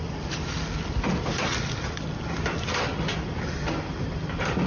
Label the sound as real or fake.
fake